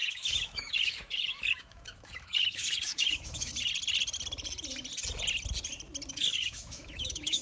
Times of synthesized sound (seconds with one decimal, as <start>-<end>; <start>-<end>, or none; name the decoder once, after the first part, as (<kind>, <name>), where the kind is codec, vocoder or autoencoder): 0.0-3.5 (autoencoder, DAC-VAE); 6.1-7.4